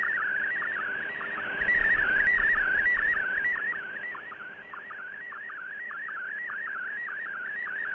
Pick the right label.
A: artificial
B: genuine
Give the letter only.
A